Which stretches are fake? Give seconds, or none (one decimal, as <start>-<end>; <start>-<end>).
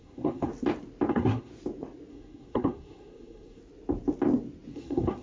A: 0.0-0.5; 1.1-1.5; 2.1-3.6; 4.7-5.2